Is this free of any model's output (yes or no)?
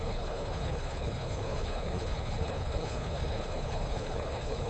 no